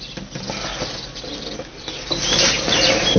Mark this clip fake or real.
fake